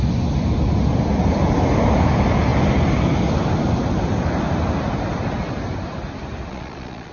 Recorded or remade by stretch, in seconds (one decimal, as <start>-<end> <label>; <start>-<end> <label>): 0.0-6.5 recorded; 6.5-7.1 remade